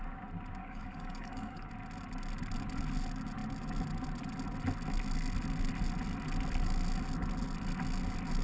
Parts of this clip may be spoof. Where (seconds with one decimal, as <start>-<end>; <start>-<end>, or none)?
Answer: 0.6-1.7